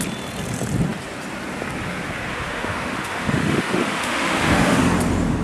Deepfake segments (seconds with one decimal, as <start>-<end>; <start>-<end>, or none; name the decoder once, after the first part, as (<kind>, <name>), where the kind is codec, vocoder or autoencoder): 2.3-4.8 (autoencoder, DAC-VAE)